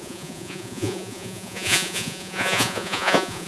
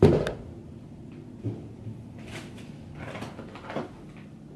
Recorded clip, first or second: second